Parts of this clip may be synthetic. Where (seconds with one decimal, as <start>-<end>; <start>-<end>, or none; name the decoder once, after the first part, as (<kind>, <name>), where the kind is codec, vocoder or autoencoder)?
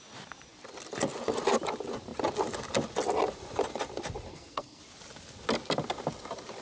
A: 4.3-4.8 (codec, SNAC)